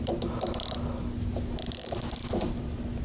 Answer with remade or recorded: recorded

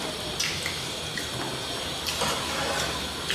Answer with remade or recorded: recorded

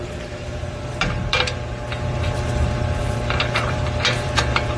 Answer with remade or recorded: remade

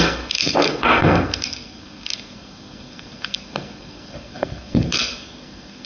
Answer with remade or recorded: remade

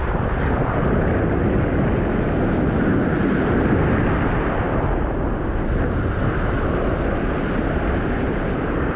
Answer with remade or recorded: recorded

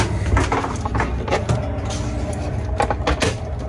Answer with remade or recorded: recorded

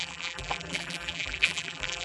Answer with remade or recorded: remade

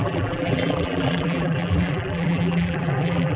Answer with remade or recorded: remade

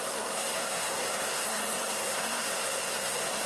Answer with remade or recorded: remade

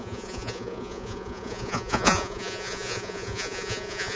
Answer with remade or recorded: remade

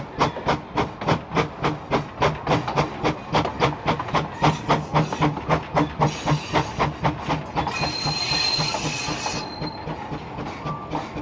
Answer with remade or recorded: recorded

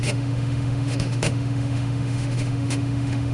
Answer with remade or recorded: remade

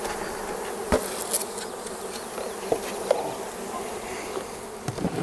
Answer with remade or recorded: recorded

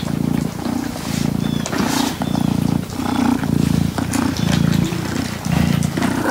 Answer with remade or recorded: recorded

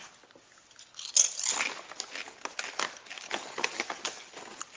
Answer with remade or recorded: recorded